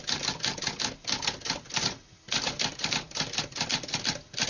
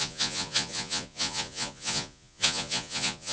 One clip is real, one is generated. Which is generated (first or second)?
second